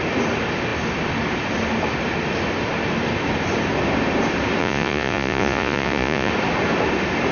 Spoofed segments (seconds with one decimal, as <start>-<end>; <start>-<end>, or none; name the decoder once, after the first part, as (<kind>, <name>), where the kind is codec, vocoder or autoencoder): 4.6-6.3 (vocoder, Vocos)